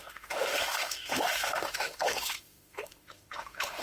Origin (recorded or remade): remade